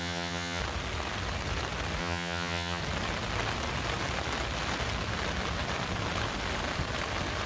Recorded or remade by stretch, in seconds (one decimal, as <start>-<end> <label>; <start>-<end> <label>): 0.0-0.6 remade; 0.6-2.0 recorded; 2.0-2.8 remade; 2.8-7.5 recorded